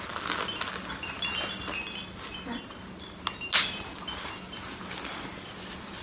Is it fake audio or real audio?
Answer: real